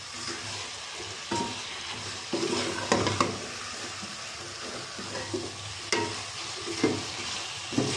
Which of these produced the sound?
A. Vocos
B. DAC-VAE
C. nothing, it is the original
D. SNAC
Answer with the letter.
C